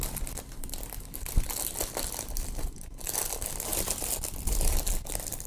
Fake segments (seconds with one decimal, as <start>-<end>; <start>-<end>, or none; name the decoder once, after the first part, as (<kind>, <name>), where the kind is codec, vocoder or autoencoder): none